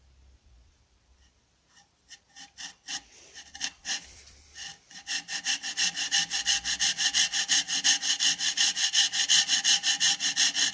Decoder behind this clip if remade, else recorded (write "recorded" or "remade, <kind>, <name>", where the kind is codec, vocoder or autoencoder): remade, vocoder, BigVGAN v2